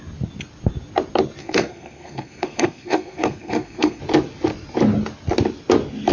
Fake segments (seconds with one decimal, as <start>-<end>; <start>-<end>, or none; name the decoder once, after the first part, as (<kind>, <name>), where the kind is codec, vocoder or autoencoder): 1.4-4.0 (codec, SNAC)